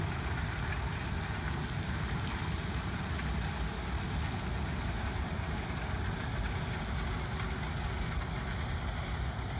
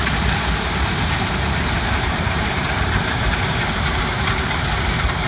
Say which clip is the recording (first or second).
first